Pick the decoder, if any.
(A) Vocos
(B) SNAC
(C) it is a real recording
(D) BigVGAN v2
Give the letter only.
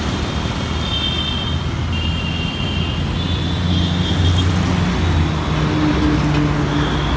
C